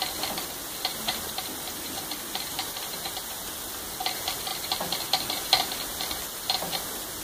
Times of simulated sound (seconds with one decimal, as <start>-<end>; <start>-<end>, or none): 0.9-3.6